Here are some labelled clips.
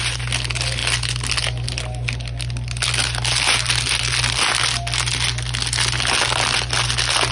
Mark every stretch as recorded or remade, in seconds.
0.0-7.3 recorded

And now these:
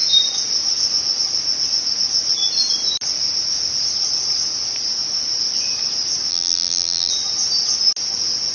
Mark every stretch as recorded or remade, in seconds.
0.0-6.3 recorded; 6.3-7.1 remade; 7.1-8.5 recorded

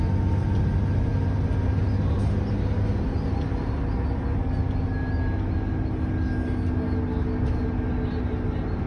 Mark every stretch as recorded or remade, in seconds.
0.0-8.9 recorded

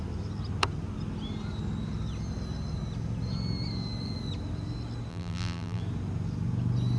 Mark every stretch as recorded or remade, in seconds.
0.0-5.1 recorded; 5.1-5.8 remade; 5.8-7.0 recorded

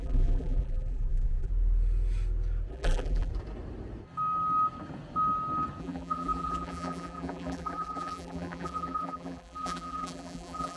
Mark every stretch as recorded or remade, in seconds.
0.0-1.5 remade; 1.5-2.7 recorded; 2.7-3.3 remade; 3.3-5.8 recorded; 5.8-10.8 remade

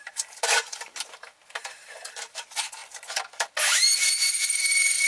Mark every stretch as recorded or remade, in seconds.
0.0-5.1 remade